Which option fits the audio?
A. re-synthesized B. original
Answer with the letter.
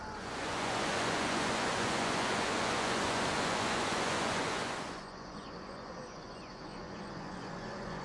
A